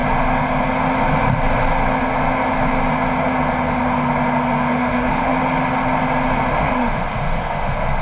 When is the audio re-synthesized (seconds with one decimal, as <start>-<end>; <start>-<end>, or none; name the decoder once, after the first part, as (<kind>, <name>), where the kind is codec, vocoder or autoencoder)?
4.8-5.3 (autoencoder, DAC-VAE); 6.5-8.0